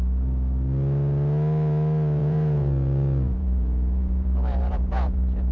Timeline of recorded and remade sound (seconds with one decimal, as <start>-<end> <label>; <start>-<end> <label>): 0.0-2.2 recorded; 2.2-5.5 remade